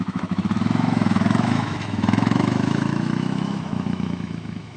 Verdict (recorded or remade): remade